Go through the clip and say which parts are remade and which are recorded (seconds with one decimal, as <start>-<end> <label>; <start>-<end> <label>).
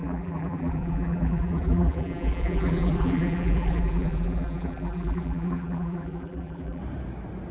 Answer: 0.0-6.8 remade; 6.8-7.5 recorded